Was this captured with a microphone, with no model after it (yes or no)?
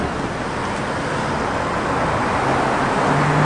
yes